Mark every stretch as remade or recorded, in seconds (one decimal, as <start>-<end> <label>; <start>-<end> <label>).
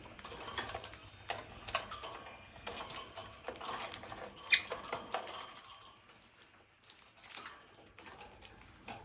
0.0-2.2 recorded; 2.2-2.8 remade; 2.8-9.0 recorded